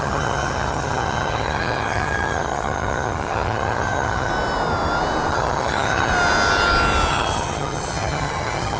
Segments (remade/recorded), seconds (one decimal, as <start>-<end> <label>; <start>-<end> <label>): 0.0-4.3 remade; 4.3-5.3 recorded; 5.3-6.1 remade; 6.1-7.1 recorded; 7.1-8.8 remade